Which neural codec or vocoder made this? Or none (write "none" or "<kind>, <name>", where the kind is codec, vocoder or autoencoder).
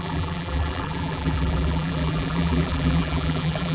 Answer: vocoder, BigVGAN v2